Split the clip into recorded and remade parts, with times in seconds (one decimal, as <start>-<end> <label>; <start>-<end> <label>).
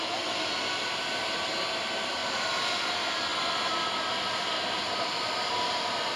0.0-6.2 recorded